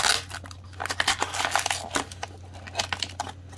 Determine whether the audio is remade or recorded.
recorded